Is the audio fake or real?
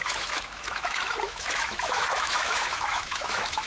fake